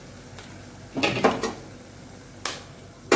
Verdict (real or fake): real